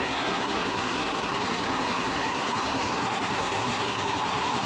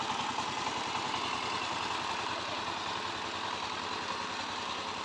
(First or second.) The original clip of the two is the second